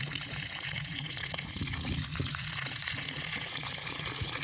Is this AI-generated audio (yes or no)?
yes